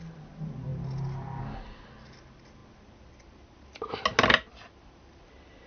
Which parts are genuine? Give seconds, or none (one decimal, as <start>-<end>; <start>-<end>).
0.0-5.7